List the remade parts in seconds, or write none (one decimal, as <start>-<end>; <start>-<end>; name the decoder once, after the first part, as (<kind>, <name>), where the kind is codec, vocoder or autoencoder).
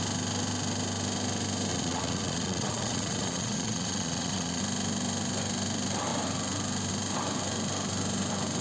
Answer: 1.7-4.6 (vocoder, Vocos)